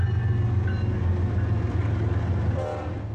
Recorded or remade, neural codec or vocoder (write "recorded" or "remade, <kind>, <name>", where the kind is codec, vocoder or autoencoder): recorded